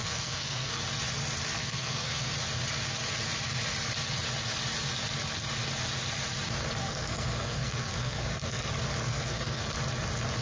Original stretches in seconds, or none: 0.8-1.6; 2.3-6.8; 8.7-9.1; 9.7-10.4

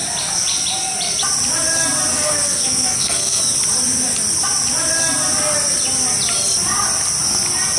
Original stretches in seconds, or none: 0.0-2.1; 3.4-7.8

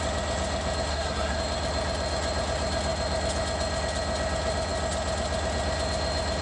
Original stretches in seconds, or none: 0.0-0.9; 1.4-6.4

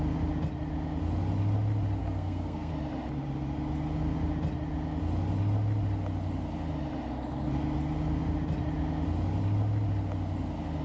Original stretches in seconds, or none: 0.0-2.0; 2.7-10.8

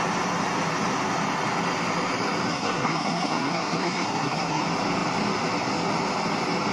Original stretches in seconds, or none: 0.0-2.5; 4.6-6.7

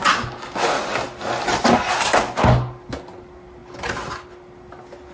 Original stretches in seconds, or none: 0.0-5.1

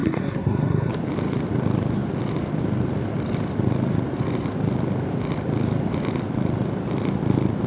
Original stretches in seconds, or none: 0.9-7.7

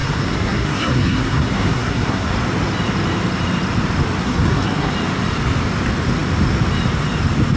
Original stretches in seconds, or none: 2.3-4.2; 4.9-7.6